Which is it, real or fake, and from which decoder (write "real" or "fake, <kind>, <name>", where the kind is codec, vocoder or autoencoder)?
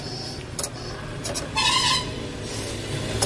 real